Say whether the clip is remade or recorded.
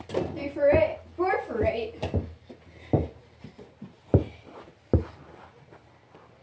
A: recorded